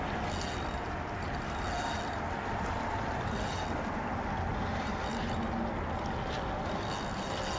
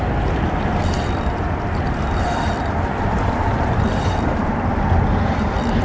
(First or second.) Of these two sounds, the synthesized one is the second